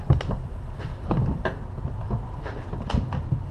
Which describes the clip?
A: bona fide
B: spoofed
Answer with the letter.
A